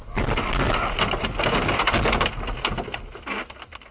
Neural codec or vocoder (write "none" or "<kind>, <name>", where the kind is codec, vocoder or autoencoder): none